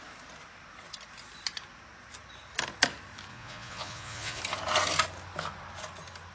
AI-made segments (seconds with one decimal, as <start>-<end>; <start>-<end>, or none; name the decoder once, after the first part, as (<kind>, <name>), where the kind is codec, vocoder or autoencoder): 3.3-4.4 (vocoder, Vocos)